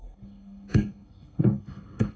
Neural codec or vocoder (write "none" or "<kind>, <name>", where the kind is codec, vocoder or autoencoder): codec, SNAC